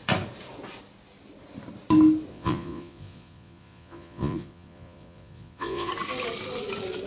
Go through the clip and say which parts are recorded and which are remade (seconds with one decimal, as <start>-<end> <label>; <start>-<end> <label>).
0.0-2.3 recorded; 2.3-5.9 remade; 5.9-7.1 recorded